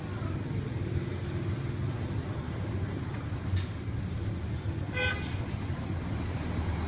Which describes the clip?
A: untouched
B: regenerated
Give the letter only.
A